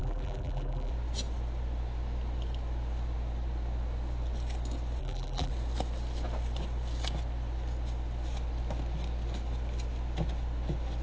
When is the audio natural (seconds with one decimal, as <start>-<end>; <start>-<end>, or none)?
0.9-5.0; 5.5-11.0